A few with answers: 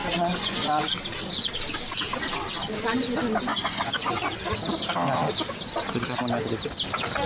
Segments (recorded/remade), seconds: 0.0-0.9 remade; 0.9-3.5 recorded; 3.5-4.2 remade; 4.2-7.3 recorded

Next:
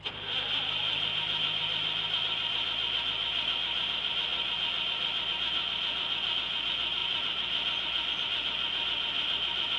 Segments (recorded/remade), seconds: 0.0-9.8 recorded

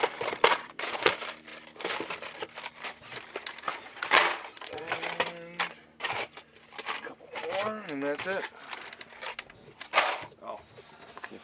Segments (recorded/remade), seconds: 0.0-0.5 recorded; 0.5-1.1 remade; 1.1-3.7 recorded; 3.7-4.8 remade; 4.8-11.4 recorded

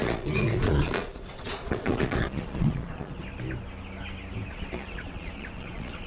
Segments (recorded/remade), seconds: 0.0-3.1 remade; 3.1-4.5 recorded; 4.5-6.1 remade

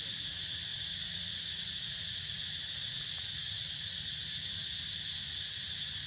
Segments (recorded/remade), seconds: 0.0-0.7 recorded; 0.7-1.6 remade; 1.6-2.0 recorded; 2.0-4.1 remade; 4.1-6.1 recorded